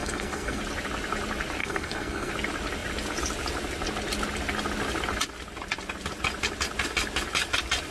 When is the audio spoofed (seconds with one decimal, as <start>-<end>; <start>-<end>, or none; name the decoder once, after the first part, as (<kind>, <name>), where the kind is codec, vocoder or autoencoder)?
0.0-0.6 (codec, SNAC); 1.6-2.3